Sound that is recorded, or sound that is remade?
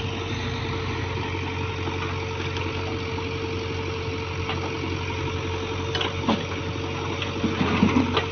recorded